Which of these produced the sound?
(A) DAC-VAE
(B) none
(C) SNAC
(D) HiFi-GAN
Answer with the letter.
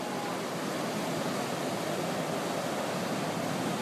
B